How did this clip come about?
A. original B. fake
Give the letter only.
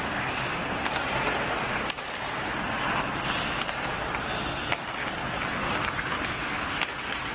A